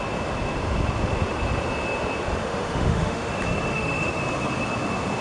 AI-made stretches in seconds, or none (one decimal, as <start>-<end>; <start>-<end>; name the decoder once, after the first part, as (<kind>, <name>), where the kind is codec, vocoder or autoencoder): 2.4-3.3 (autoencoder, DAC-VAE); 3.7-4.2